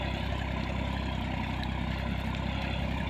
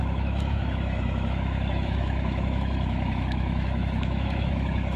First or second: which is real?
first